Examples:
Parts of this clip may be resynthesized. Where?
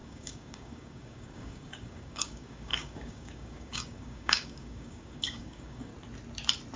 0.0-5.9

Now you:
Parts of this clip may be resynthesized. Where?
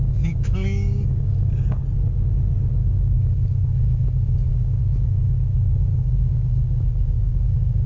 0.0-1.8; 2.7-7.9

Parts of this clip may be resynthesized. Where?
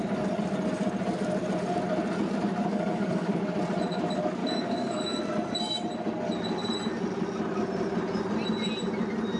2.7-3.3; 4.4-5.2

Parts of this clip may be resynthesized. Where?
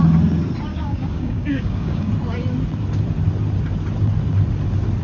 0.7-2.1